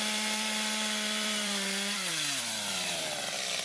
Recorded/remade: remade